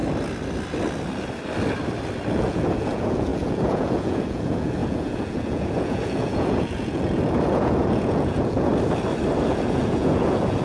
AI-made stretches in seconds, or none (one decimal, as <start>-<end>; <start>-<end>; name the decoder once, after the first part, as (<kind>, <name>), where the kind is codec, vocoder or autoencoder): 2.3-8.7 (vocoder, Vocos); 9.4-10.6